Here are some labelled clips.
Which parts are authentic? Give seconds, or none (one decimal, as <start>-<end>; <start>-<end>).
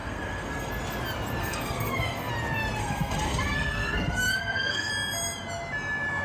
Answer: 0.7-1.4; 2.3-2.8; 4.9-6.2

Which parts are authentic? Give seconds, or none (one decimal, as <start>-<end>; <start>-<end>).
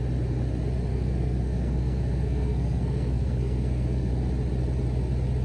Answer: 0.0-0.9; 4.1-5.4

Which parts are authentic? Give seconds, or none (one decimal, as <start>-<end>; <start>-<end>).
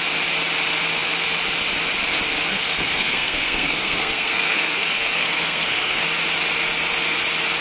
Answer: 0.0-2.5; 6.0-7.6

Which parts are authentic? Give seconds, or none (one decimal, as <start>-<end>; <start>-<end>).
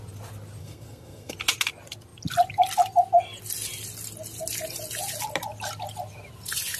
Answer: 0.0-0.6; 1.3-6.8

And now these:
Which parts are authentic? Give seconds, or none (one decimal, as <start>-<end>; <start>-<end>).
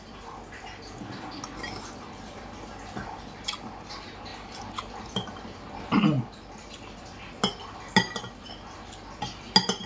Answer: 0.0-9.9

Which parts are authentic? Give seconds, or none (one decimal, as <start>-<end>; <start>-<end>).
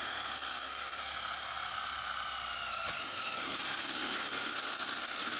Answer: 1.0-3.0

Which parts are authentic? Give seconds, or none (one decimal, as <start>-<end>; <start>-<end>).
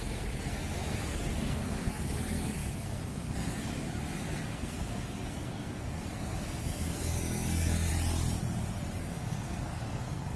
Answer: 7.9-9.0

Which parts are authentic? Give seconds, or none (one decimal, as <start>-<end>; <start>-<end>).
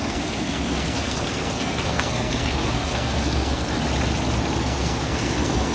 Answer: 3.7-4.6